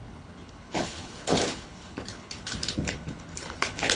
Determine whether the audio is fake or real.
fake